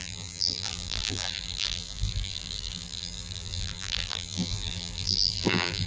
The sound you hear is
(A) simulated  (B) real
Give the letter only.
A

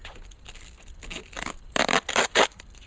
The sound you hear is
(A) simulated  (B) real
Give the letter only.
B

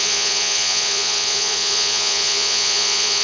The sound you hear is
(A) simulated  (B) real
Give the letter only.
A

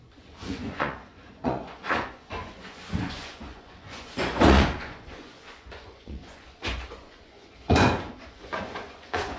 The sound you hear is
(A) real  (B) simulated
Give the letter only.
B